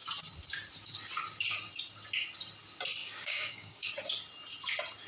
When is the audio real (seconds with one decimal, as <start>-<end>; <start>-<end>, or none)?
0.0-3.0; 3.9-5.1